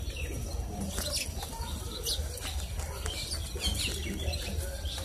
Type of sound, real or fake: real